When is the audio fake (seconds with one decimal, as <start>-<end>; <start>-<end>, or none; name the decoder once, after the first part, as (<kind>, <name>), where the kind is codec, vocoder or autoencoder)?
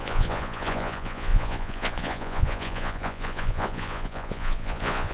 0.0-5.1 (vocoder, Vocos)